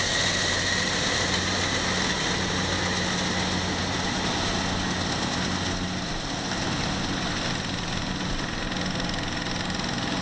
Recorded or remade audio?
recorded